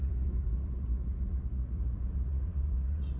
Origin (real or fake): fake